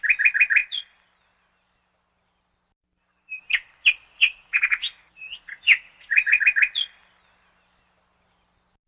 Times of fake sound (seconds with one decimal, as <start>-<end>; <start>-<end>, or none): 4.1-6.4